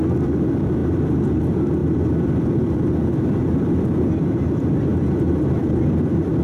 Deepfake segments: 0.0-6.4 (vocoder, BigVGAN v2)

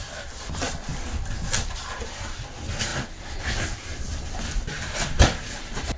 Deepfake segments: 0.0-0.9 (vocoder, BigVGAN v2); 1.6-6.0